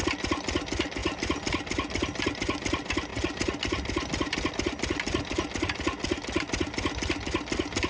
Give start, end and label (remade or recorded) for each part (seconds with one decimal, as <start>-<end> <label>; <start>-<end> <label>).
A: 0.0-3.1 recorded; 3.1-4.5 remade; 4.5-7.9 recorded